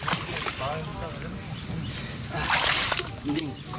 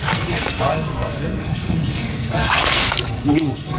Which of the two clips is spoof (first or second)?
second